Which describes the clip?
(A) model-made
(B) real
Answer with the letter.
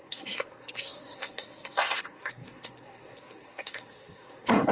A